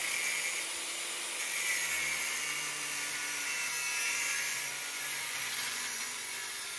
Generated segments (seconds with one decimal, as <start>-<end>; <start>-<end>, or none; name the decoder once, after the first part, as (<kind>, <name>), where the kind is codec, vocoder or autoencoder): 4.1-6.8 (vocoder, Vocos)